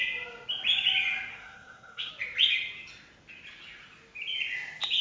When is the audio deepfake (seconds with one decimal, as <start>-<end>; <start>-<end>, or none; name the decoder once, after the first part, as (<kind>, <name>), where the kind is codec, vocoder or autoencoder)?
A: 1.3-2.1 (codec, SNAC)